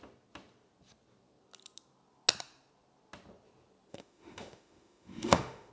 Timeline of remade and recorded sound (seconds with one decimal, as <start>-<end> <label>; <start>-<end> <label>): 0.0-3.9 recorded; 3.9-5.7 remade